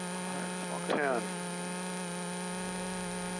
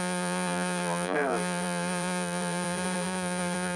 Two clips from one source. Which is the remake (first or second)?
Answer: second